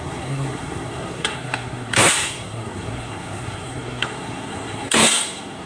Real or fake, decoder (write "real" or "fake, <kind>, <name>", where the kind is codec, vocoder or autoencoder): fake, codec, SNAC